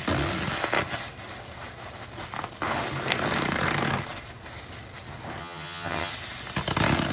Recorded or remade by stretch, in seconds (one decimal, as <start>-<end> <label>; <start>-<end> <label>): 0.0-5.4 recorded; 5.4-6.1 remade; 6.1-7.1 recorded